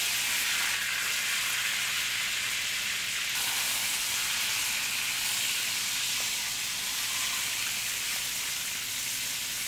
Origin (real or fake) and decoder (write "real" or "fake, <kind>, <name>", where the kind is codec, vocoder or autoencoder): real